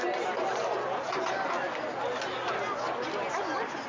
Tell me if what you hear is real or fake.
real